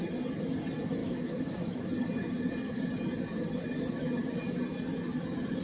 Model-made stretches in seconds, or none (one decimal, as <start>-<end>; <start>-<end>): 1.0-1.9